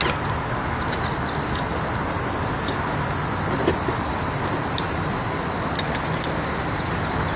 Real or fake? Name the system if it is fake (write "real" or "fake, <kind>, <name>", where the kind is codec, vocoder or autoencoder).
real